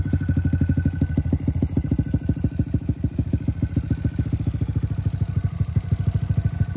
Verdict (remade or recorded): recorded